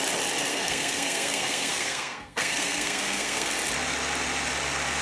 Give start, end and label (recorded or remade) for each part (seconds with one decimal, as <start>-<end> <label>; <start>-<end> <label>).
0.0-0.5 recorded; 0.5-3.5 remade; 3.5-5.0 recorded